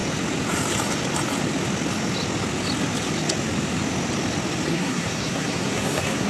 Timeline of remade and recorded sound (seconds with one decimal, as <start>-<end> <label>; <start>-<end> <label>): 0.0-4.7 recorded; 4.7-6.3 remade

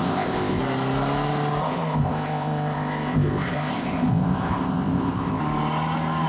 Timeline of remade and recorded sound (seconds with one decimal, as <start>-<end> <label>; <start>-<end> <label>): 0.0-0.6 remade; 0.6-1.6 recorded; 1.6-5.4 remade; 5.4-6.3 recorded

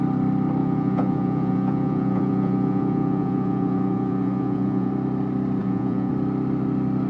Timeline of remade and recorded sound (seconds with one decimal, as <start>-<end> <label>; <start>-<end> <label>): 0.0-0.6 recorded; 0.6-4.9 remade; 4.9-5.6 recorded; 5.6-6.1 remade; 6.1-7.1 recorded

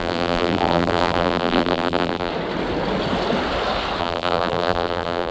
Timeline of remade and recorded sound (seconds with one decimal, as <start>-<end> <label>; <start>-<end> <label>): 0.0-2.3 remade; 2.3-4.0 recorded; 4.0-5.3 remade

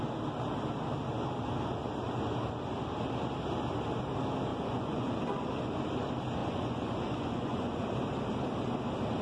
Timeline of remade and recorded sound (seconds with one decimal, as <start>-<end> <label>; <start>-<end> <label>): 0.0-4.5 recorded; 4.5-5.1 remade; 5.1-6.4 recorded; 6.4-7.8 remade; 7.8-9.2 recorded

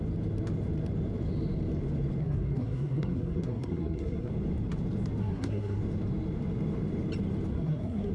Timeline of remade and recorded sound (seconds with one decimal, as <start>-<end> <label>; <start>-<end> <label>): 0.0-2.2 recorded; 2.2-4.3 remade; 4.3-5.2 recorded; 5.2-5.8 remade; 5.8-7.5 recorded; 7.5-8.1 remade

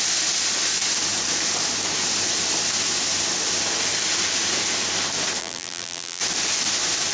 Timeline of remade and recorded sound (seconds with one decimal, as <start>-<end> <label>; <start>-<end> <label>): 0.0-5.4 recorded; 5.4-6.2 remade; 6.2-7.1 recorded

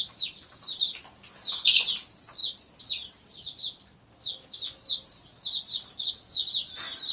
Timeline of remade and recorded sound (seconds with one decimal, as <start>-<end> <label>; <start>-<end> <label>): 0.0-7.1 recorded